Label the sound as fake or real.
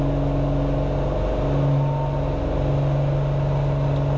real